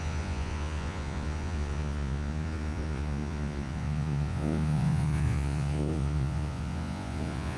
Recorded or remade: remade